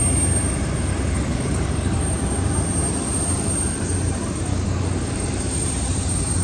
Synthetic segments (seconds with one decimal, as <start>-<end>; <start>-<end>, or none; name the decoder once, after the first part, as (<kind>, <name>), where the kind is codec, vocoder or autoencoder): 0.9-2.0 (codec, DAC); 4.5-5.5